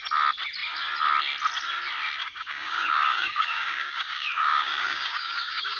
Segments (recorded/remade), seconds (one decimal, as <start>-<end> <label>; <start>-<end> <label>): 0.0-2.2 recorded; 2.2-5.8 remade